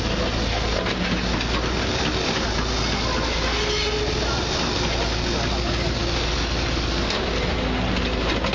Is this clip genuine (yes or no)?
yes